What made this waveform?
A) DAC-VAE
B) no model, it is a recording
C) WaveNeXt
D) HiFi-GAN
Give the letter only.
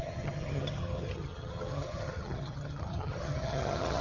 D